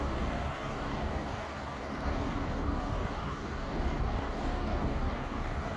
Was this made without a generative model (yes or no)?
no